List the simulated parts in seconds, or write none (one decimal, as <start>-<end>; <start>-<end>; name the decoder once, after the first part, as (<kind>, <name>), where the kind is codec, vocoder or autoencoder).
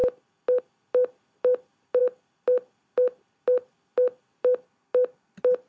none